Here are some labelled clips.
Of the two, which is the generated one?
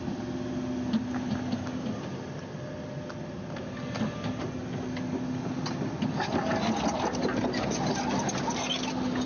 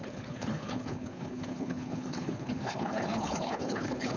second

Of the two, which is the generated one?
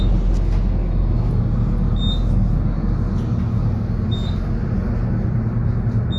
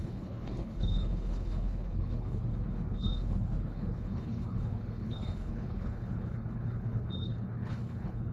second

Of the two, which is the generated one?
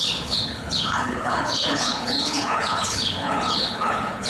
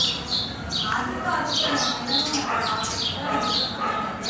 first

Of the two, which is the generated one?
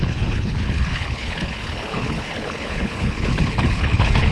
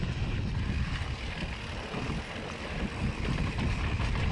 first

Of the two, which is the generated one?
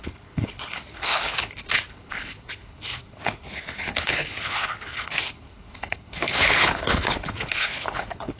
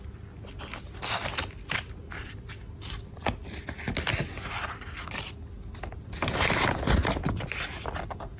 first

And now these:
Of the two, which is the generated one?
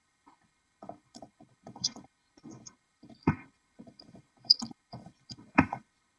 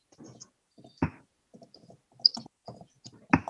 first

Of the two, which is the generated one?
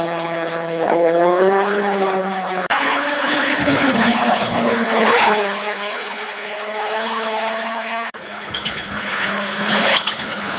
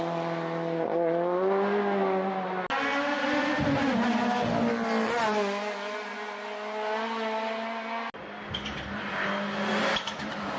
first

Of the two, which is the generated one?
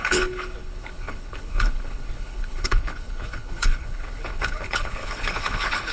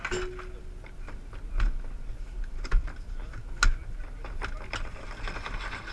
first